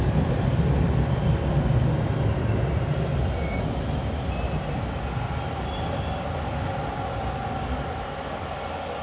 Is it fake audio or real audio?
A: real